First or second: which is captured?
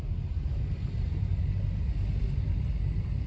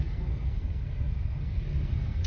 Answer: first